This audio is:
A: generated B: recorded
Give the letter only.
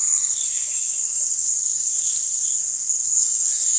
A